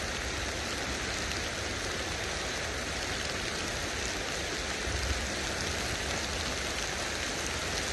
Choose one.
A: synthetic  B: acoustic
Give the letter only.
B